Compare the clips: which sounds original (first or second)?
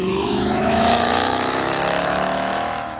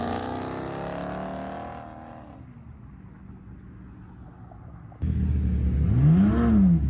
second